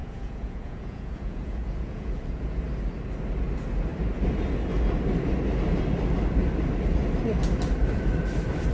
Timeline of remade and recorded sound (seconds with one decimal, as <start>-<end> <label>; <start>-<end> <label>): 0.0-2.6 remade; 2.6-8.7 recorded